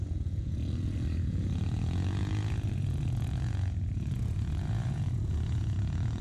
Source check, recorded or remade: remade